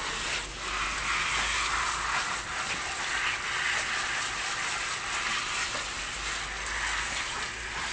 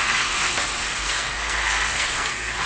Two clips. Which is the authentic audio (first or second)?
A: first